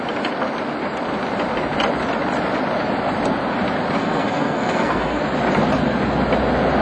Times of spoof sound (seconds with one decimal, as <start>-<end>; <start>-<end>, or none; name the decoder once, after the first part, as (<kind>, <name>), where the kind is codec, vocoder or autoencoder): 4.0-5.2 (codec, SNAC)